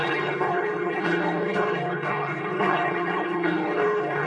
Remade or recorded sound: remade